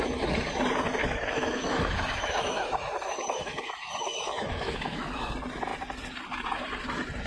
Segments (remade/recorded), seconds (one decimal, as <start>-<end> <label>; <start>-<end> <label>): 0.0-1.0 recorded; 1.0-5.3 remade; 5.3-7.3 recorded